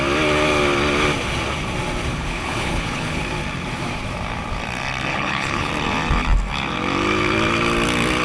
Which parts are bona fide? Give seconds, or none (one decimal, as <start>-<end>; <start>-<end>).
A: 0.0-2.1; 3.2-5.1; 5.7-8.2